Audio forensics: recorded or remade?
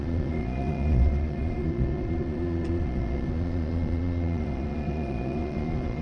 remade